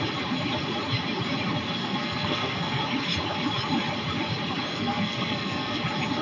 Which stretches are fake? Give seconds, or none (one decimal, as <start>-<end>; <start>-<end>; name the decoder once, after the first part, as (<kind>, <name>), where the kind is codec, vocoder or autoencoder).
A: 1.8-2.8 (codec, SNAC); 4.7-5.8